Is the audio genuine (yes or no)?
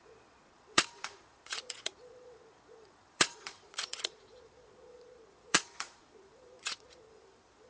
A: no